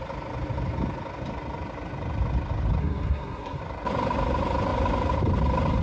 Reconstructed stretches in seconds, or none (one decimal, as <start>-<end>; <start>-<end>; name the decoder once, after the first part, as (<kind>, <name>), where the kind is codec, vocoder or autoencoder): 2.8-3.6 (codec, SNAC)